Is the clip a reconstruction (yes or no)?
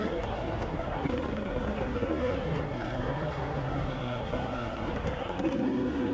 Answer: yes